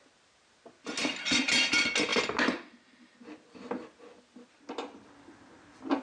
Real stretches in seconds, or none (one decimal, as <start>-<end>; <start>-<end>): 0.0-6.0